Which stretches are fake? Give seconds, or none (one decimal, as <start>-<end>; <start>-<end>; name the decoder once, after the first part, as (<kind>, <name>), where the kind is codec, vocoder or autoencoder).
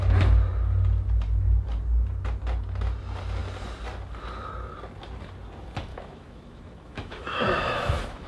5.9-8.3 (autoencoder, DAC-VAE)